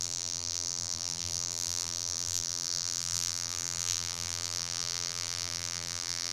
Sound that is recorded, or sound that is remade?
remade